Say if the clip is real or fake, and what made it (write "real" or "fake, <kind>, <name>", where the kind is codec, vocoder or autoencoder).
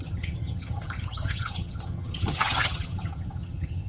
fake, vocoder, HiFi-GAN